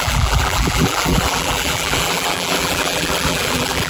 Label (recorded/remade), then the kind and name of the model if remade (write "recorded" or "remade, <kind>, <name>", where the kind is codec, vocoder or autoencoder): remade, vocoder, BigVGAN v2